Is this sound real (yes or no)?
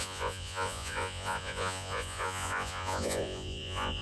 no